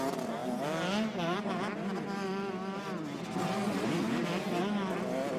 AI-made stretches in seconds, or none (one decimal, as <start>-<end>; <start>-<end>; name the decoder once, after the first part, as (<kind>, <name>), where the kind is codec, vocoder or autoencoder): none